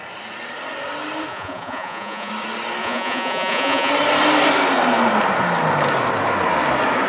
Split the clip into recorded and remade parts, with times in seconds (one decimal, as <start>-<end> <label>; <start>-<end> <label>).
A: 0.0-1.3 recorded; 1.3-2.3 remade; 2.3-2.8 recorded; 2.8-3.9 remade; 3.9-7.1 recorded